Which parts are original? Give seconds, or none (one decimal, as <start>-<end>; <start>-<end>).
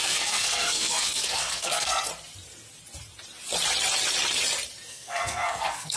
2.1-4.9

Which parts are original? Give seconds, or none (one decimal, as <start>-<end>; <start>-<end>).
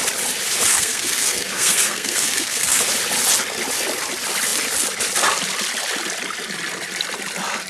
0.0-0.7; 2.8-7.7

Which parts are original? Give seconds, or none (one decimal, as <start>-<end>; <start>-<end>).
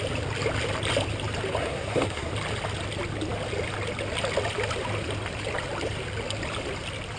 0.0-1.6; 2.3-7.2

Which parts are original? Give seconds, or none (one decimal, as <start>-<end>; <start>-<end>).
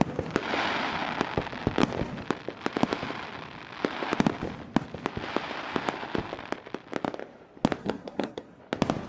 0.0-7.8; 8.6-9.1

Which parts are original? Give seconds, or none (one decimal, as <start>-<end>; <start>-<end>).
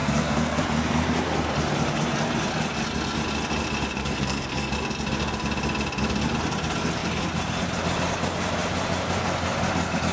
0.6-4.0; 4.7-10.1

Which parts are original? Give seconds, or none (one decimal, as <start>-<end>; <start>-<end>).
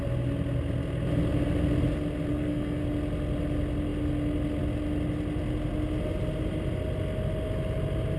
0.0-2.3; 2.8-8.2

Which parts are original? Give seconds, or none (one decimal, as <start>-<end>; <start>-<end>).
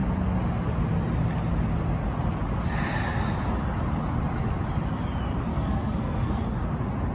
0.0-5.5; 6.4-7.1